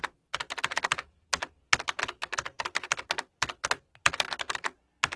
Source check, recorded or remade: recorded